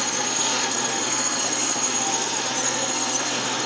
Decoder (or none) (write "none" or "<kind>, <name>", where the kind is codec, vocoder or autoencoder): codec, SNAC